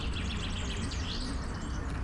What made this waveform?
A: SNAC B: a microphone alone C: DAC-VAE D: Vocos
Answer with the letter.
B